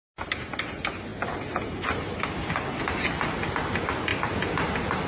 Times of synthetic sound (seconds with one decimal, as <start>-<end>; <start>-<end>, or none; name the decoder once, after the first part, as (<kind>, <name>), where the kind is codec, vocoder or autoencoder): none

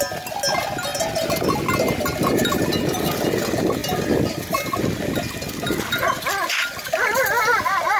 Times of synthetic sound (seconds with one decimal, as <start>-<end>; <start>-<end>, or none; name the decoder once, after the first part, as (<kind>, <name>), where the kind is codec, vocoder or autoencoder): none

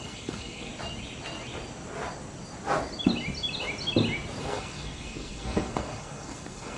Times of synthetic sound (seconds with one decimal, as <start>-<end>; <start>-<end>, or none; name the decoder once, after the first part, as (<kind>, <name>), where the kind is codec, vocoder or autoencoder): 0.0-0.7 (codec, SNAC); 4.4-6.8

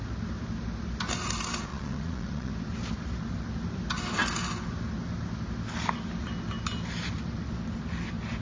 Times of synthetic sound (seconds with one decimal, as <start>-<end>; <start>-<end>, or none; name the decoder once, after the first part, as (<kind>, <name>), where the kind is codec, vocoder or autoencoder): 1.7-2.5 (vocoder, Vocos)

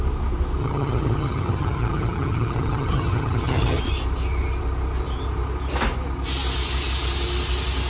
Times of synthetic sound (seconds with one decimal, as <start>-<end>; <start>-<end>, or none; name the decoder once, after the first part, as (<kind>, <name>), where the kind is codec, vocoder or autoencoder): 0.6-3.8 (vocoder, HiFi-GAN)

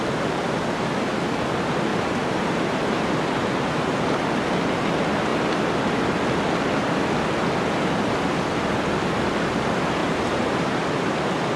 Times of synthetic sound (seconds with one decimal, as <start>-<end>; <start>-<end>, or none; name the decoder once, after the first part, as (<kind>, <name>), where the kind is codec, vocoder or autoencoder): 1.9-4.2 (vocoder, BigVGAN v2); 10.0-10.8

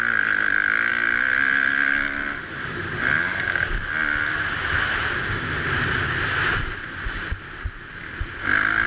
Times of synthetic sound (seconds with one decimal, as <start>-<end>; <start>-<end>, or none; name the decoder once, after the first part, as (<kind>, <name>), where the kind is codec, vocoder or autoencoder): none

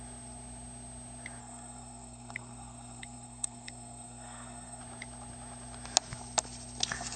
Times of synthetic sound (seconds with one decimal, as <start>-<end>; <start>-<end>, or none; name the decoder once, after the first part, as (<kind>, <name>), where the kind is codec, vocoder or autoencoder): 1.4-4.8 (codec, SNAC)